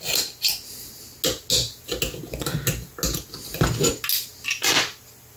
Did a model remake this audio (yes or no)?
no